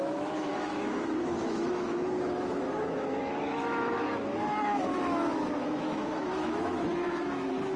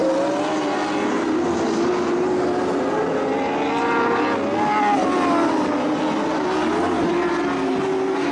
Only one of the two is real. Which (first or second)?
second